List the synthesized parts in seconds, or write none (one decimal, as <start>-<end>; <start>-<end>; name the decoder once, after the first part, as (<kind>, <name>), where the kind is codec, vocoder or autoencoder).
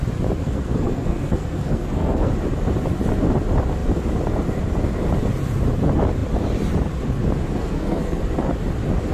0.4-2.3 (codec, SNAC); 7.6-8.2